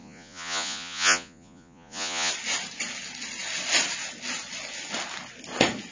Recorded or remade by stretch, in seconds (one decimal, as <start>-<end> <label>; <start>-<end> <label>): 0.0-2.3 remade; 2.3-5.9 recorded